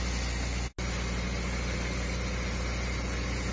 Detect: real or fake real